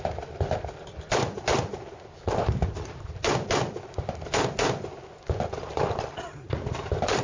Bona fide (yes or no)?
yes